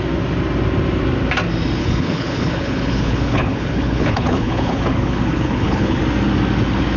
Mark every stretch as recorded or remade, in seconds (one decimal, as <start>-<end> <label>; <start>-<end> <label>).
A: 0.0-1.8 recorded; 1.8-6.0 remade; 6.0-7.0 recorded